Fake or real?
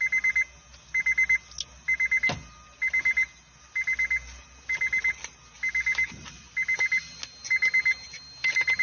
real